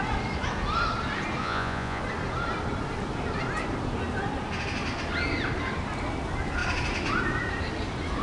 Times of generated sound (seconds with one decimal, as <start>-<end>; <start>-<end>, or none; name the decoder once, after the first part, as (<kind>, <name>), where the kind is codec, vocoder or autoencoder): 1.4-2.0 (vocoder, Vocos)

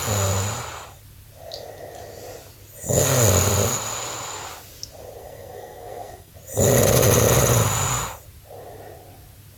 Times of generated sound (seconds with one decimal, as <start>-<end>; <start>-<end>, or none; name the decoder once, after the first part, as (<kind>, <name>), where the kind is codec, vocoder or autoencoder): 5.2-6.3 (codec, SNAC)

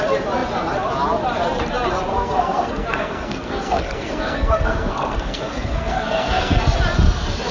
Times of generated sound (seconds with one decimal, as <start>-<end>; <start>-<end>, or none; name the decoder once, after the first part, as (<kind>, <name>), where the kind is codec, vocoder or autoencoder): 2.1-6.6 (codec, SNAC)

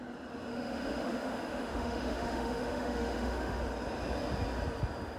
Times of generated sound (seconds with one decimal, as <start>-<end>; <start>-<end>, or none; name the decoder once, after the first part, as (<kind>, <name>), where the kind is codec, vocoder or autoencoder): 0.5-3.6 (autoencoder, DAC-VAE)